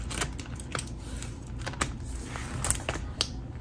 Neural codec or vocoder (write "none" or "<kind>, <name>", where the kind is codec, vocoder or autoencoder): none